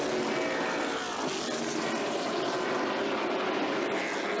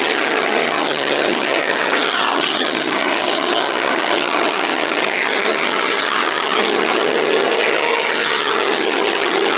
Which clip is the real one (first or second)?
first